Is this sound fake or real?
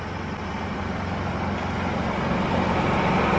real